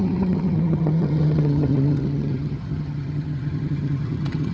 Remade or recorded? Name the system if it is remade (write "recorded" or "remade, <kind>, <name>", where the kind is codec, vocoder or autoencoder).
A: remade, vocoder, HiFi-GAN